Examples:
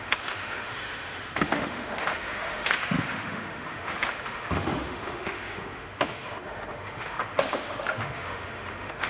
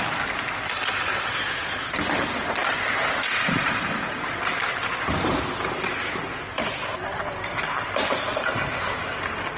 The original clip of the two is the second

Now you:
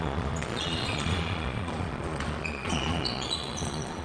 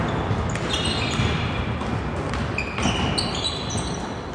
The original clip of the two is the second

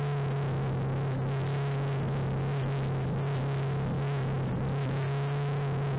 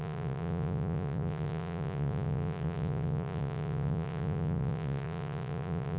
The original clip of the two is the first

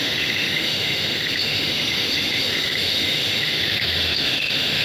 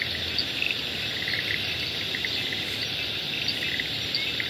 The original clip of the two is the second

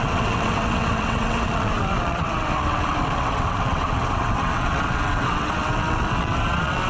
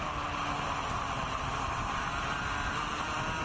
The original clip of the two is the second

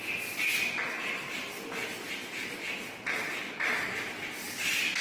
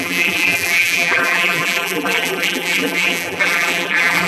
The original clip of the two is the first